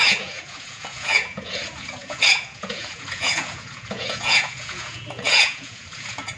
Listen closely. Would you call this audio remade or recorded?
remade